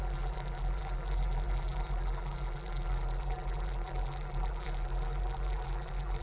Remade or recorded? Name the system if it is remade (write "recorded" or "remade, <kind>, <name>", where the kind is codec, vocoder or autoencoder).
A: remade, vocoder, BigVGAN v2